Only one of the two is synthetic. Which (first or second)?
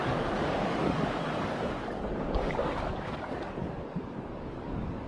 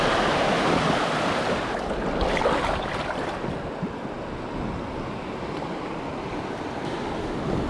first